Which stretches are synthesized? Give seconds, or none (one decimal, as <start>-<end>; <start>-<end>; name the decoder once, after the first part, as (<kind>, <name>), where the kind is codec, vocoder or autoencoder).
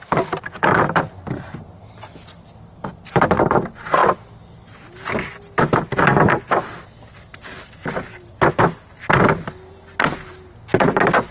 none